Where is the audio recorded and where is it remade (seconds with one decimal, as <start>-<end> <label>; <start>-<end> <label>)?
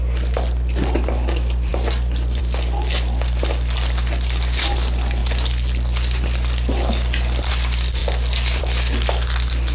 0.0-5.2 remade; 5.2-7.5 recorded; 7.5-8.0 remade; 8.0-8.6 recorded; 8.6-9.7 remade